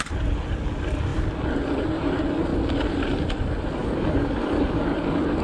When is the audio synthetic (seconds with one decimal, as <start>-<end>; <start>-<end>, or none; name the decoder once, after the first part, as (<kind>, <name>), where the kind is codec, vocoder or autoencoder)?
3.8-4.8 (codec, DAC)